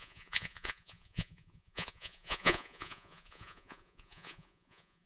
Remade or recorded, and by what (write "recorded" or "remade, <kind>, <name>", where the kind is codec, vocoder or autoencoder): remade, vocoder, Vocos